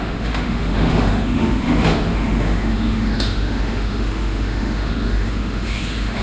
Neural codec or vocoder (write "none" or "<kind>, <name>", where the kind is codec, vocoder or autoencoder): autoencoder, DAC-VAE